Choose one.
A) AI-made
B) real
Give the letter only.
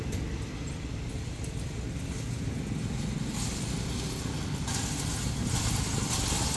B